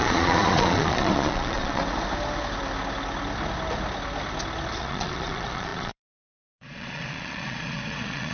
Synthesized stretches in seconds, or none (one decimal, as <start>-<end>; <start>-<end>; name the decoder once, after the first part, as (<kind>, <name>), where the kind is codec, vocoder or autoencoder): 0.0-1.8 (vocoder, Vocos); 4.8-8.3